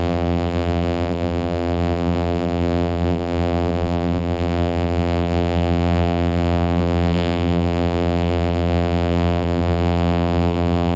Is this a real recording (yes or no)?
no